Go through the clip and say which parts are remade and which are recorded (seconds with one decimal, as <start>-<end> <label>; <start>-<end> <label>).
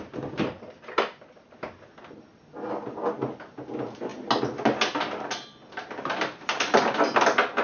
0.0-7.6 recorded